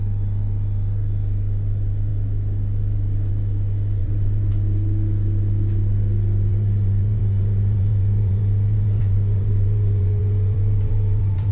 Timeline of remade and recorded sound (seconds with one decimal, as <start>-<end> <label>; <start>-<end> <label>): 0.0-4.0 recorded; 4.0-4.5 remade; 4.5-6.5 recorded; 6.5-11.5 remade